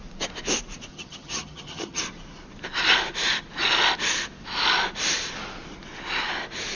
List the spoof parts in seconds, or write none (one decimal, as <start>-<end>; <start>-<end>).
0.9-2.0